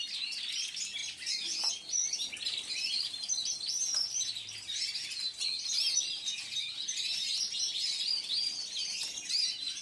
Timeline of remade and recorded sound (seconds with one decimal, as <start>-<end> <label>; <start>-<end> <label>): 0.0-9.8 recorded

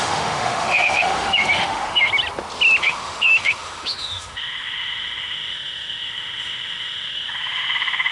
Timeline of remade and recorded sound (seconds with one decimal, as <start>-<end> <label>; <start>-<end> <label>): 0.0-2.1 remade; 2.1-2.8 recorded; 2.8-8.1 remade

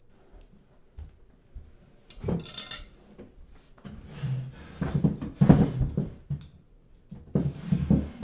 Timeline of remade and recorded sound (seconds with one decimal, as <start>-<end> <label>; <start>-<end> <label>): 0.0-8.2 recorded

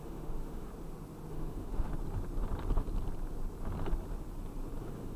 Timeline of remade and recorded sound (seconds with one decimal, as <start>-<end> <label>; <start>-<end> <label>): 0.0-0.7 remade; 0.7-1.3 recorded; 1.3-1.9 remade; 1.9-4.8 recorded; 4.8-5.2 remade

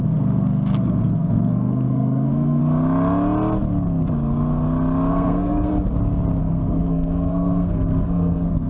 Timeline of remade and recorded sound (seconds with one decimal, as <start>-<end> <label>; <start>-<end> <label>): 0.0-2.6 remade; 2.6-5.1 recorded; 5.1-5.7 remade; 5.7-6.4 recorded; 6.4-8.7 remade

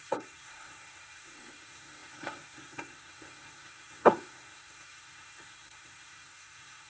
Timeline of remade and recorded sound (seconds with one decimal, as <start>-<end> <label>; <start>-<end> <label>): 0.0-6.9 remade

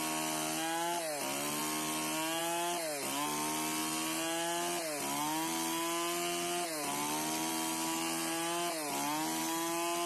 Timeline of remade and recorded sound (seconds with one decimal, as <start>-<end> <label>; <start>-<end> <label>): 0.0-10.1 recorded

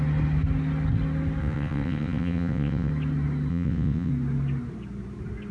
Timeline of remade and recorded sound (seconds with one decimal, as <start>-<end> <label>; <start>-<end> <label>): 0.0-1.4 recorded; 1.4-2.9 remade; 2.9-3.5 recorded; 3.5-4.1 remade; 4.1-5.5 recorded